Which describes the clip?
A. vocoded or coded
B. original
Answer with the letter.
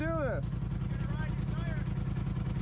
B